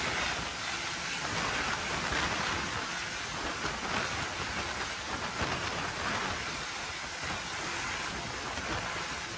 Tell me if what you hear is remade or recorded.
recorded